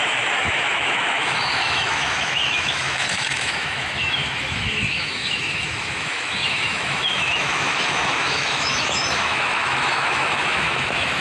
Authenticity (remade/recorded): remade